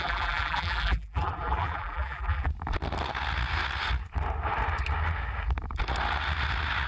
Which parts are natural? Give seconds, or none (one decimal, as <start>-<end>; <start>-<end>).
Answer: 2.5-6.9